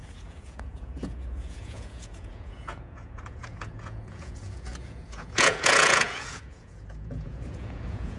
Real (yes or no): no